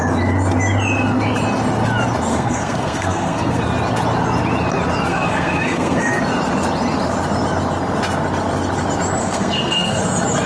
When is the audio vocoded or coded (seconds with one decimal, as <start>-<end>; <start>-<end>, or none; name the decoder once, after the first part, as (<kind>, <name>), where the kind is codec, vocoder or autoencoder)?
2.3-3.6 (codec, SNAC); 5.1-6.2; 9.2-10.0

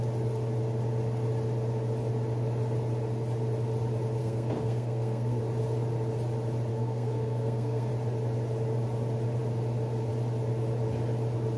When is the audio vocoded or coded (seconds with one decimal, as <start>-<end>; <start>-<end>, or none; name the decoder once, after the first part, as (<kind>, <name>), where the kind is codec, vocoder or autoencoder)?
4.2-5.4 (codec, SNAC); 6.7-7.9

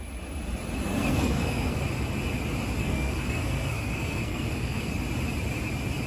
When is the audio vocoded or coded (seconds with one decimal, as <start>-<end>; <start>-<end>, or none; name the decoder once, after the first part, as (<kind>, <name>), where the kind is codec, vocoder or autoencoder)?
0.9-1.8 (codec, SNAC); 2.8-4.9

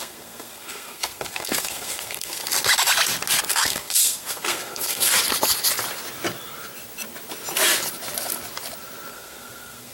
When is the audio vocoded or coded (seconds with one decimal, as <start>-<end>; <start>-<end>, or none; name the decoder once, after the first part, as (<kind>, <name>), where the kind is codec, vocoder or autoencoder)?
0.0-2.4 (codec, SNAC); 3.5-5.1; 9.1-9.9

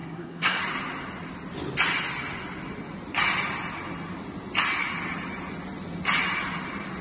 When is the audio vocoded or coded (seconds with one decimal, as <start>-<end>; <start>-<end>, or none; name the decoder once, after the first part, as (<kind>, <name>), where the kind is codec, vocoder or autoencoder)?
0.0-0.6 (codec, SNAC)

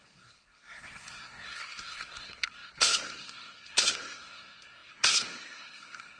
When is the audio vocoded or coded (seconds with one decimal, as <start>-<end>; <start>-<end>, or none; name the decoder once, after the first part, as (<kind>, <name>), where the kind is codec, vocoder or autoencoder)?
0.0-6.2 (codec, SNAC)